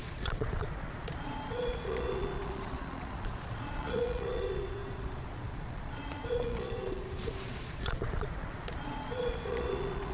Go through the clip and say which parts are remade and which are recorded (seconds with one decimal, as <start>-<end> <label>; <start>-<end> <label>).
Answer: 0.0-10.1 remade